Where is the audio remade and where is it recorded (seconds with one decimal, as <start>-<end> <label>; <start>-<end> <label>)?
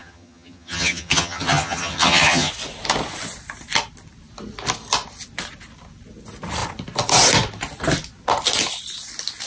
0.0-2.5 remade; 2.5-9.5 recorded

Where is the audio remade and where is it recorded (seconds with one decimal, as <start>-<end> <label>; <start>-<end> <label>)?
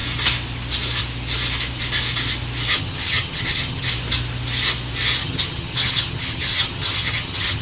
0.0-2.7 recorded; 2.7-3.9 remade; 3.9-5.2 recorded; 5.2-7.6 remade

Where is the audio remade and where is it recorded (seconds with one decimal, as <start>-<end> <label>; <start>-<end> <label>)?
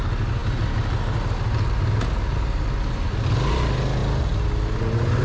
0.0-5.2 recorded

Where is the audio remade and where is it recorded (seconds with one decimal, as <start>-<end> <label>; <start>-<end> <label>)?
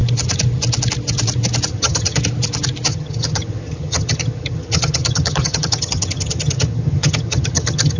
0.0-1.7 recorded; 1.7-2.2 remade; 2.2-2.9 recorded; 2.9-8.0 remade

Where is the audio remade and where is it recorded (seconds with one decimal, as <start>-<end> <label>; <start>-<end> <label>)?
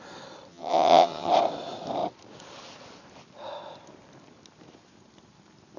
0.0-0.5 recorded; 0.5-1.3 remade; 1.3-5.8 recorded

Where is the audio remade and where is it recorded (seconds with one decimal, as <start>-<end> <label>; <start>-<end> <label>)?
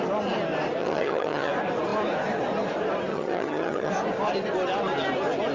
0.0-0.8 recorded; 0.8-1.5 remade; 1.5-3.1 recorded; 3.1-3.9 remade; 3.9-5.5 recorded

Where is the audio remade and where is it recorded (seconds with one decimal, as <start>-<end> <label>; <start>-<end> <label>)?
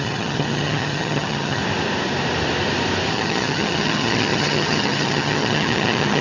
0.0-1.6 remade; 1.6-3.1 recorded; 3.1-6.2 remade